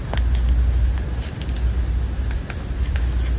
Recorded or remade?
recorded